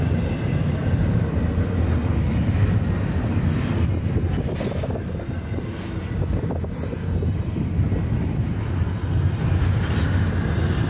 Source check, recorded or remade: recorded